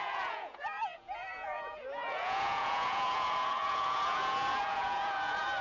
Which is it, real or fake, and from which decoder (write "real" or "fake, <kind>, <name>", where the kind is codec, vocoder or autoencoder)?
fake, vocoder, Vocos